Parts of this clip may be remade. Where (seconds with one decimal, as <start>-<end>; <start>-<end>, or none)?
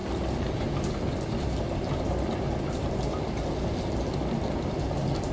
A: 0.0-3.2